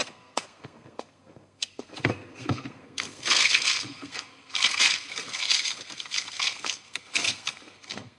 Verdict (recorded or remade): remade